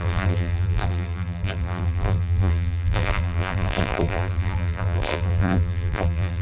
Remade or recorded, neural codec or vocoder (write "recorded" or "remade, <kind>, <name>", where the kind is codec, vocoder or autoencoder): remade, vocoder, BigVGAN v2